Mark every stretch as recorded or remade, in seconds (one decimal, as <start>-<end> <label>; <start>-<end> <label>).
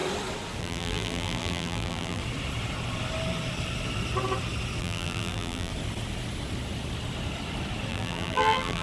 0.0-0.6 recorded; 0.6-2.2 remade; 2.2-4.8 recorded; 4.8-5.7 remade; 5.7-7.9 recorded; 7.9-8.8 remade